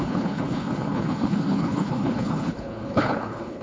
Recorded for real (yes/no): no